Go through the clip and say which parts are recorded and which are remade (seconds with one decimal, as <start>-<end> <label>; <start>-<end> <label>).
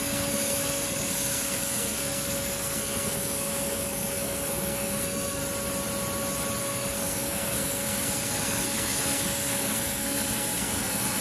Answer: 0.0-5.4 remade; 5.4-6.6 recorded; 6.6-11.2 remade